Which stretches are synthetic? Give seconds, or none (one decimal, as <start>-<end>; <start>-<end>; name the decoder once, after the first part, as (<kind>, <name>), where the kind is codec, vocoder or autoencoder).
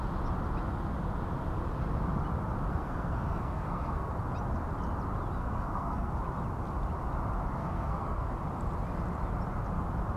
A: 2.7-4.1 (codec, SNAC); 5.4-6.1; 7.6-8.3